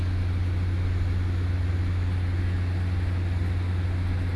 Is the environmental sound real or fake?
real